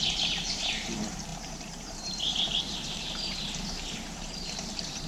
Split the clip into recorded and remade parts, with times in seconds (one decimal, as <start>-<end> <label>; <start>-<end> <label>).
0.0-5.1 remade